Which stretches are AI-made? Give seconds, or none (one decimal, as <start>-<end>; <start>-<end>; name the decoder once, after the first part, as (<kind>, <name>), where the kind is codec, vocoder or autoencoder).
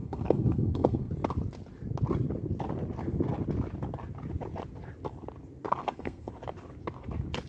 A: 0.0-1.1 (codec, SNAC); 5.8-6.3